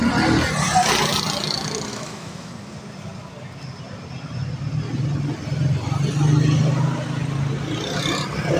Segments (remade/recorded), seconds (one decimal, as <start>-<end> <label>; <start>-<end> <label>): 0.0-1.9 recorded; 1.9-2.5 remade; 2.5-8.6 recorded